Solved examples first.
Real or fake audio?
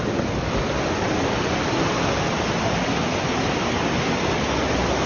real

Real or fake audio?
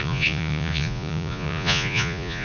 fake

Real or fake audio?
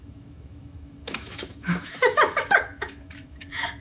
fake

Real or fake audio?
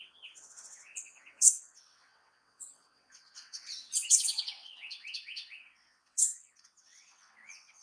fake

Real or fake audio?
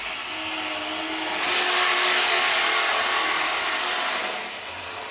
real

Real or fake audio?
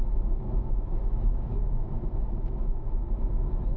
fake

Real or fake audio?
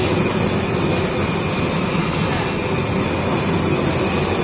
real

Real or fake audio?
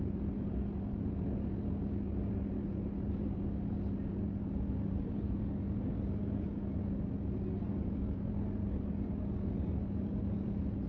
real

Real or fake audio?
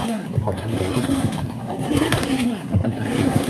fake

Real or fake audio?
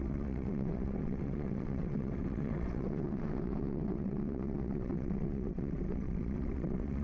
fake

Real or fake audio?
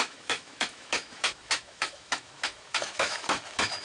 fake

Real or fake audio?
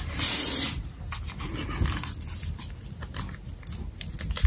real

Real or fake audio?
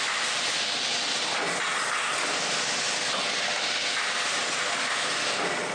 real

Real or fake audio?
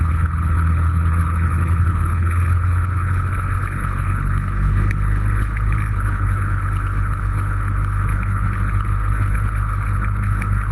fake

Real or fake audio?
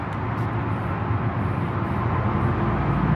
real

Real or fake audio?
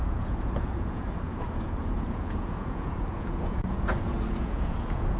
fake